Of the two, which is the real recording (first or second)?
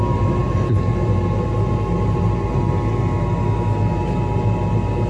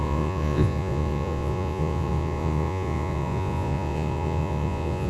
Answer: first